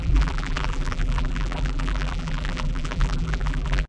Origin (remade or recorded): remade